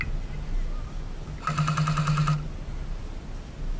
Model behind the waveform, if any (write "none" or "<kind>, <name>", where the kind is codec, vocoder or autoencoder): none